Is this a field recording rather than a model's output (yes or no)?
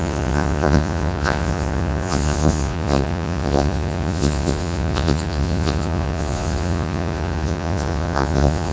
no